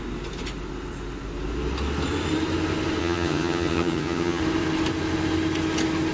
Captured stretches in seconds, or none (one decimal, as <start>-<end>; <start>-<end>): 0.0-3.0; 4.4-6.1